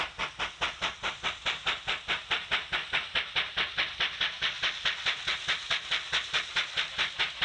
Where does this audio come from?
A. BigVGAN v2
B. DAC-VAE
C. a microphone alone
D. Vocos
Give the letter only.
C